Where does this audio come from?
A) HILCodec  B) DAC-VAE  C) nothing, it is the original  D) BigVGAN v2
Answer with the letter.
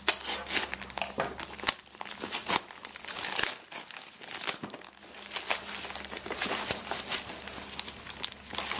C